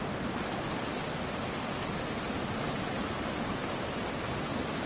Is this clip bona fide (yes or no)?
yes